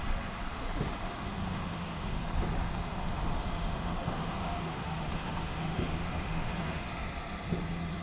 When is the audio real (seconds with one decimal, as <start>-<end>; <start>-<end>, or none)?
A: 0.0-1.1; 2.2-3.0; 6.9-8.0